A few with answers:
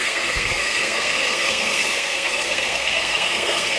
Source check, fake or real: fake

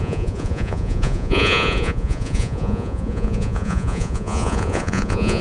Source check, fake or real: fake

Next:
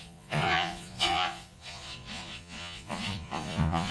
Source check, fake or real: fake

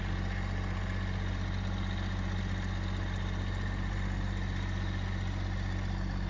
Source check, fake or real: real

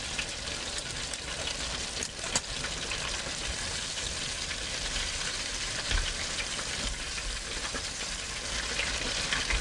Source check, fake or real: fake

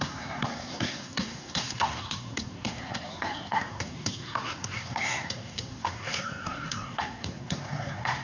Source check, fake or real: fake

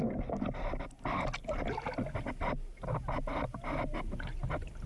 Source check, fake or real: real